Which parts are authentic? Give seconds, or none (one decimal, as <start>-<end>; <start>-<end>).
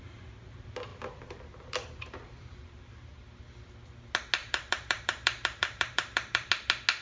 0.0-0.9; 3.2-4.4; 6.5-7.0